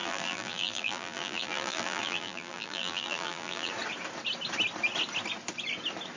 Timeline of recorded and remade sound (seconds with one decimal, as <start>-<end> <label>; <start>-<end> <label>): 0.0-3.7 remade; 3.7-6.2 recorded